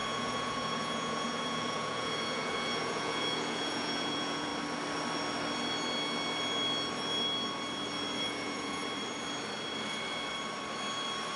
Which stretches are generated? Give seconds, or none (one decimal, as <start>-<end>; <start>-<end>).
0.0-4.5; 8.2-8.8